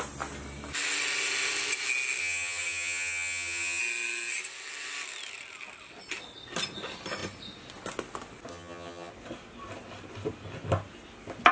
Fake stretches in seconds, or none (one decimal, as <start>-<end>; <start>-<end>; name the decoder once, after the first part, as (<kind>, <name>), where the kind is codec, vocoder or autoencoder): 2.2-3.8 (vocoder, HiFi-GAN); 8.5-9.1

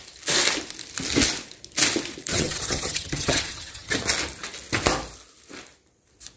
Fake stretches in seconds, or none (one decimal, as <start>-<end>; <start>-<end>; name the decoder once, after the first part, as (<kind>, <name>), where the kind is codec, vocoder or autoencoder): 2.3-3.9 (vocoder, HiFi-GAN)